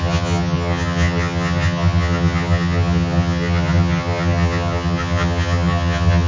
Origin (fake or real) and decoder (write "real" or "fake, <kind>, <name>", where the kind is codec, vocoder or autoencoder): fake, vocoder, HiFi-GAN